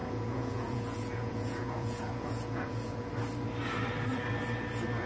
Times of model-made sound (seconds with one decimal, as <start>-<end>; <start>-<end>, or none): 0.0-3.1